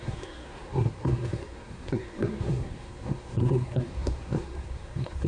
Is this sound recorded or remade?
remade